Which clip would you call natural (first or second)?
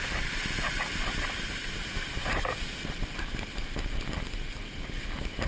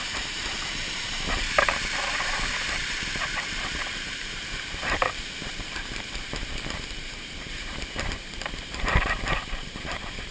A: first